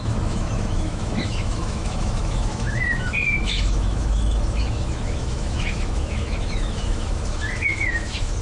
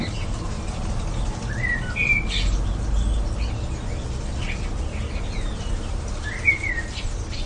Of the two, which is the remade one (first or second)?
first